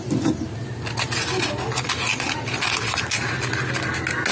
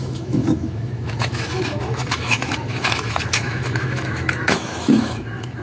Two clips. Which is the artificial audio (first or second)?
second